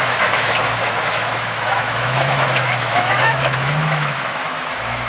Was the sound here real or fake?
fake